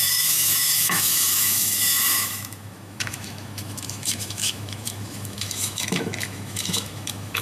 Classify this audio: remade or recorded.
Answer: remade